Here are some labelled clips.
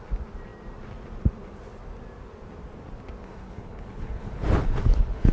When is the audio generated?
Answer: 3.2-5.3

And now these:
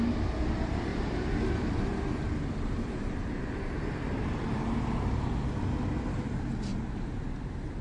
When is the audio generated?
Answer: 0.9-4.6; 6.7-7.3